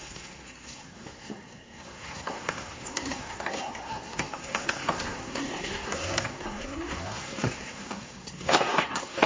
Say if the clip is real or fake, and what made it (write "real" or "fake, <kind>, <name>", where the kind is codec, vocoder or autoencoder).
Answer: fake, codec, SNAC